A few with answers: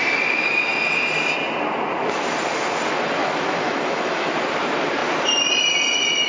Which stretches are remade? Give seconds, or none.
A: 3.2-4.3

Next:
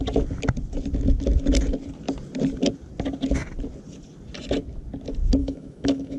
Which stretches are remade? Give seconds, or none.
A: 5.4-6.2

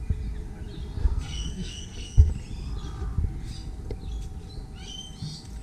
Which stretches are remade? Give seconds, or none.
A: 1.0-2.3

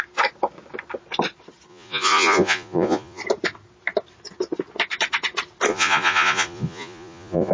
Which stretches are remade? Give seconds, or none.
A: 1.7-3.2; 5.7-7.5

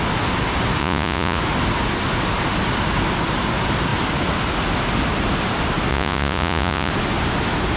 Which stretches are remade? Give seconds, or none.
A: 0.8-1.4; 5.9-6.9